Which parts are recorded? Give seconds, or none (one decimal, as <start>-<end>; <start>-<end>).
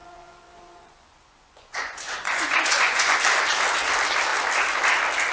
3.2-5.3